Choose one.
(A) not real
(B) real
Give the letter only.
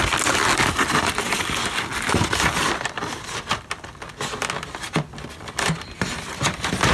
B